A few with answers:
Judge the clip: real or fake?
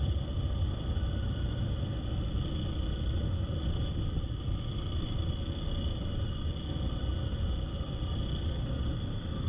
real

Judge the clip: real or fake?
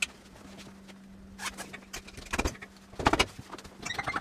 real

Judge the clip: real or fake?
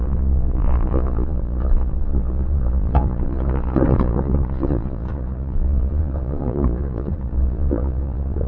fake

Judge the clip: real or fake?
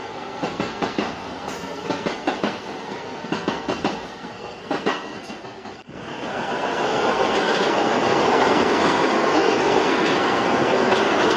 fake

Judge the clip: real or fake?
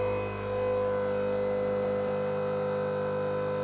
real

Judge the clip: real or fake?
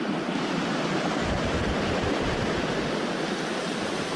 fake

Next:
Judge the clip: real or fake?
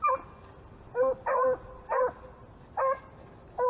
real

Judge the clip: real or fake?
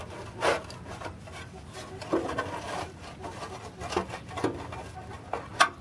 real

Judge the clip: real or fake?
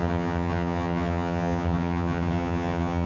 fake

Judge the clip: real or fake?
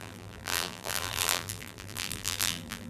fake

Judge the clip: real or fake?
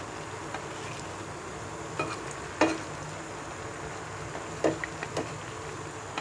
real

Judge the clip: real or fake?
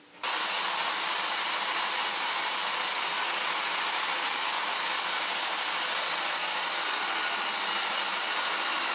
real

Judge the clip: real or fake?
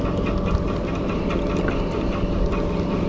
real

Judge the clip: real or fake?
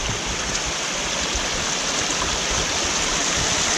real